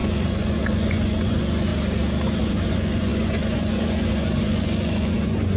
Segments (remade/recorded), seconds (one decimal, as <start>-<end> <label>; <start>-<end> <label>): 0.0-1.7 remade; 1.7-2.4 recorded; 2.4-5.6 remade